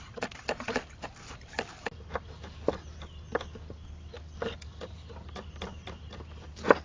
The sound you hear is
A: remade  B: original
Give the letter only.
B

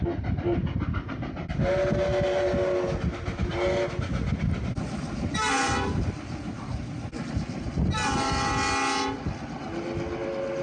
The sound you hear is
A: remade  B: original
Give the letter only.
B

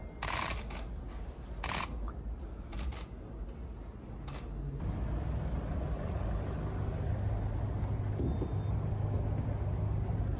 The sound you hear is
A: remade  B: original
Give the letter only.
B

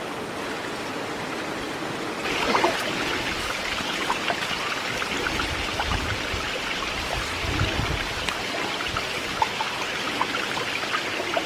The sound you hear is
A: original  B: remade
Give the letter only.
A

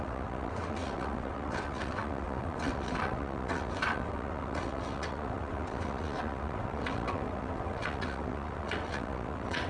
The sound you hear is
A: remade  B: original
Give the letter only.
A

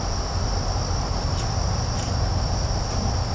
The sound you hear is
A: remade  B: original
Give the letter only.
B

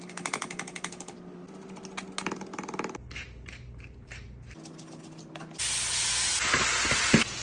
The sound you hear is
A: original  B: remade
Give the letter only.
A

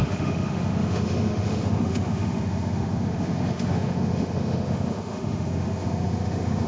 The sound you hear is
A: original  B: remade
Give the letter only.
B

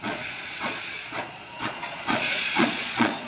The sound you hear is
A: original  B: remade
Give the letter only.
B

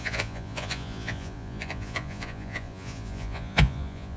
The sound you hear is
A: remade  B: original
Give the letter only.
A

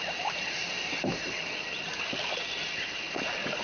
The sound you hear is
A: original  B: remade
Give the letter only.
A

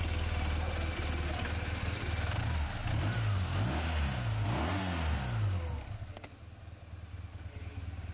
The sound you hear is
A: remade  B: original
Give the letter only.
B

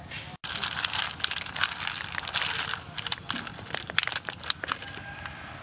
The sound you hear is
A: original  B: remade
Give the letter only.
A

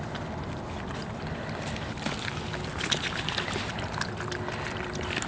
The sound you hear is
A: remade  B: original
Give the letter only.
B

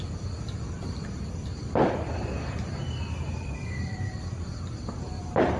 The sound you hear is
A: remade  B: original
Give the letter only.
B